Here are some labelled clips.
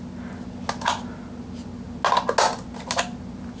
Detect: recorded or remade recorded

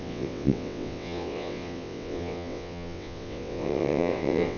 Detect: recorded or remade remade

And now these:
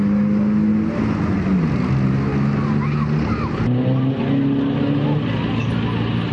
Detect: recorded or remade recorded